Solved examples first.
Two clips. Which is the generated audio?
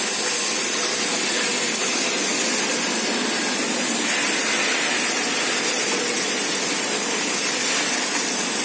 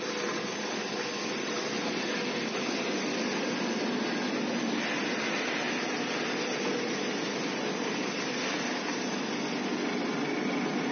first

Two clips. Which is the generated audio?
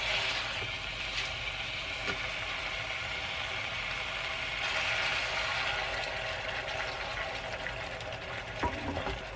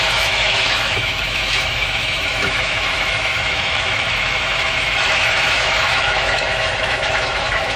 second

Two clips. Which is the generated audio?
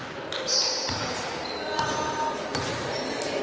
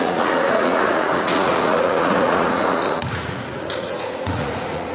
second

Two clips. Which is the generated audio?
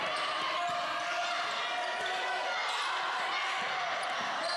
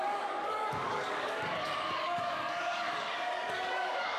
second